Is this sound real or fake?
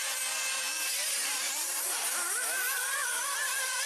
real